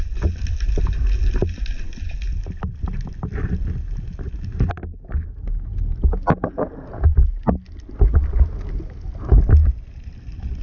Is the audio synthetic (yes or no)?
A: no